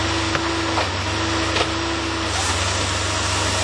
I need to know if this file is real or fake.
real